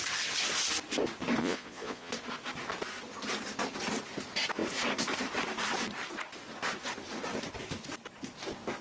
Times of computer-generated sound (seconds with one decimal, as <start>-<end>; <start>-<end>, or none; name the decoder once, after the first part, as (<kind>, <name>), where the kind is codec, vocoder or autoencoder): 1.4-2.1 (vocoder, Vocos)